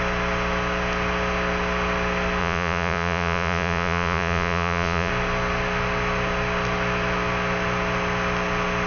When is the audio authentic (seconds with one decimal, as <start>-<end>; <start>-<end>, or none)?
0.0-2.4; 5.1-8.9